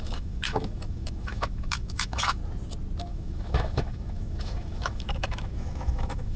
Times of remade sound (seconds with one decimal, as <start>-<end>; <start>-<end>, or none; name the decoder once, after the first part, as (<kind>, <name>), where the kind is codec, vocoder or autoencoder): 0.0-2.4 (autoencoder, DAC-VAE); 3.0-6.4